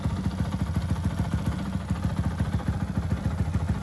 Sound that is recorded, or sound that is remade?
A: recorded